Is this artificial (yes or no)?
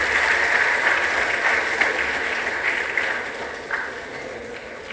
no